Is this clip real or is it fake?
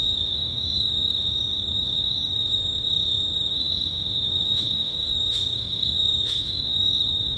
fake